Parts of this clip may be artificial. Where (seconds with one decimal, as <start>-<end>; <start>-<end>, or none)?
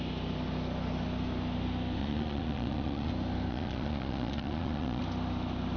2.0-3.1; 3.5-5.0